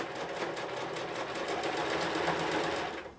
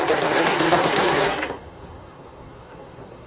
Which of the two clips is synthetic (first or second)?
second